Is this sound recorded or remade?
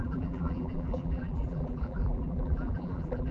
remade